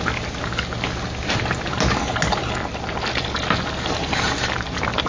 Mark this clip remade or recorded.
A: recorded